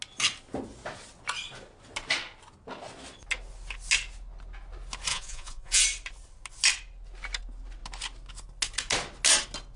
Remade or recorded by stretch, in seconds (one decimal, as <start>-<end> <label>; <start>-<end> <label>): 0.0-5.1 recorded; 5.1-5.8 remade; 5.8-9.8 recorded